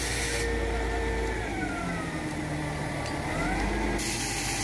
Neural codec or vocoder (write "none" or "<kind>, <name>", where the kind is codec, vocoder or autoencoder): none